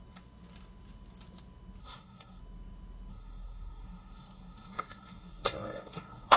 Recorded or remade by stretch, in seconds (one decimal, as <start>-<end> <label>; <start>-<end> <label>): 0.0-1.8 recorded; 1.8-2.4 remade; 2.4-3.1 recorded; 3.1-6.4 remade